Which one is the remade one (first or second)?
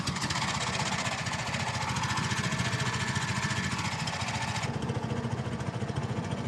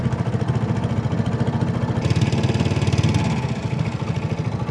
first